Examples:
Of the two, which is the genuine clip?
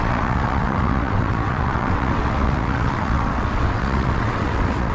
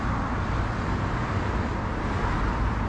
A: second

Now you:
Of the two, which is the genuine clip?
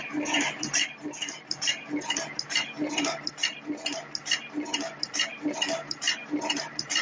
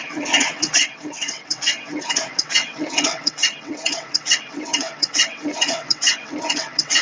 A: first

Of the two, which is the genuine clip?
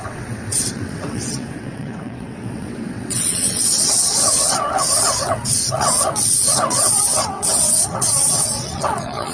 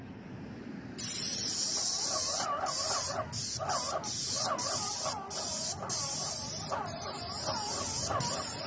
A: second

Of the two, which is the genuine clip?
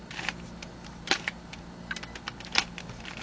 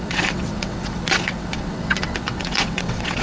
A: first